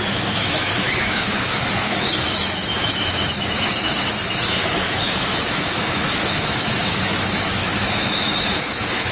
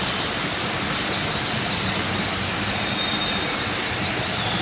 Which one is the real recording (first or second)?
second